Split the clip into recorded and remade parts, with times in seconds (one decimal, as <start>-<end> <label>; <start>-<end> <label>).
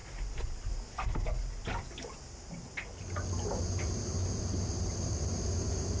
0.0-3.6 recorded; 3.6-4.2 remade; 4.2-4.9 recorded; 4.9-6.0 remade